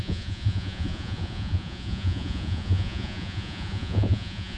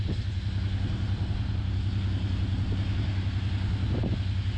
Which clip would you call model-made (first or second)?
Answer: first